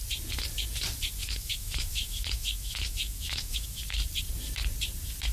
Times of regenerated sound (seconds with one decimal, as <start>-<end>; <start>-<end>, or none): 1.2-3.8